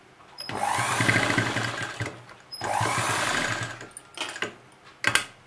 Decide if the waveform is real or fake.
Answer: real